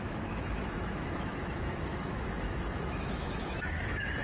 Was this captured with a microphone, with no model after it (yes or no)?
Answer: no